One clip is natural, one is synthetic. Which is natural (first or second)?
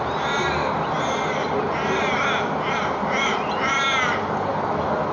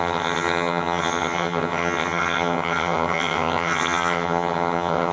first